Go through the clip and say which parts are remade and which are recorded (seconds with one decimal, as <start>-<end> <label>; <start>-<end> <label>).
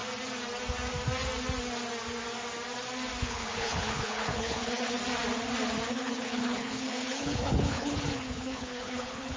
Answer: 0.0-3.2 recorded; 3.2-5.0 remade; 5.0-5.9 recorded; 5.9-9.4 remade